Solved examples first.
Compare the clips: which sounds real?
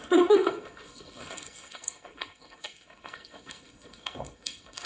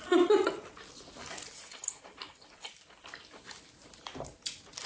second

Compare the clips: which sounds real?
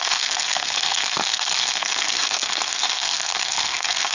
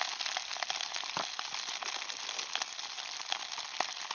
second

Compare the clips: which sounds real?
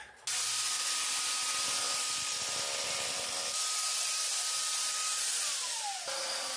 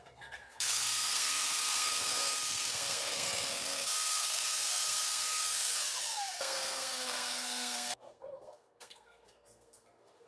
first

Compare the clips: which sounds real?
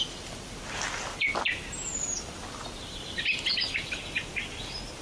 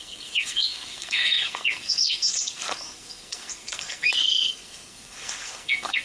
first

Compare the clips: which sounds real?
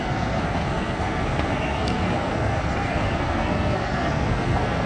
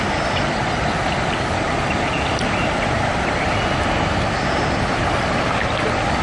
second